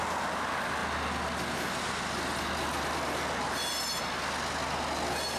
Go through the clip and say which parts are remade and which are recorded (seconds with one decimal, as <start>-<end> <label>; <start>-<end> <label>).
0.0-5.4 recorded